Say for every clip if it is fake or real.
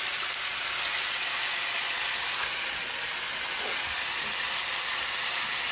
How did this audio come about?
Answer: real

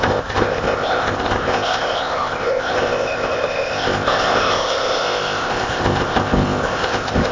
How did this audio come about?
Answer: fake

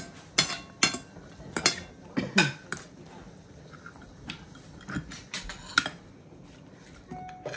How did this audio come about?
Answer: real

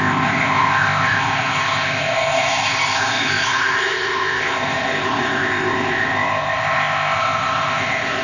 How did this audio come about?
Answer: fake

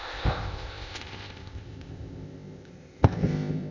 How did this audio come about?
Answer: fake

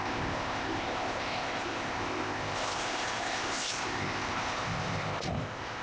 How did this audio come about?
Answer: fake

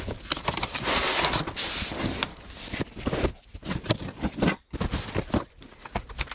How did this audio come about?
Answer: real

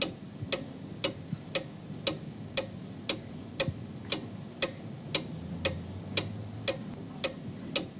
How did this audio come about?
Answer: real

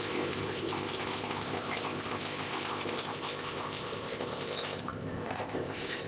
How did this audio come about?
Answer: fake